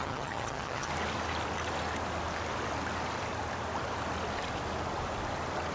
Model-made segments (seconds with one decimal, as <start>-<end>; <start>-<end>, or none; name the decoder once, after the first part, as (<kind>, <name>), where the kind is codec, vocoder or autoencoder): 0.0-0.9 (vocoder, HiFi-GAN)